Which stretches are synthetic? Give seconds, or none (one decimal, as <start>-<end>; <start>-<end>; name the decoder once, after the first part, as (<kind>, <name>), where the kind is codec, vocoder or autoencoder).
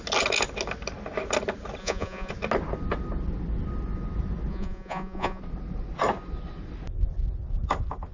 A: 1.8-2.3 (vocoder, Vocos); 4.5-5.4